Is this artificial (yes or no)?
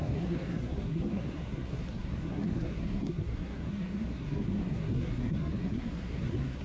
yes